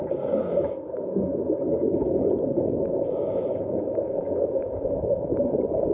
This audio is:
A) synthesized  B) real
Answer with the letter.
A